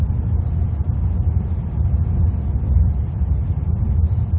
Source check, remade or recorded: recorded